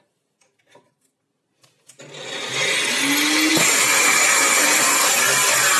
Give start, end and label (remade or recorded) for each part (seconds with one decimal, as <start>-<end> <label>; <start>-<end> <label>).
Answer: 0.0-5.8 recorded